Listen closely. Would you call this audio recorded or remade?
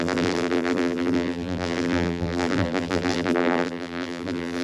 remade